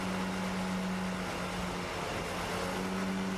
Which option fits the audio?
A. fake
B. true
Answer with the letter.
B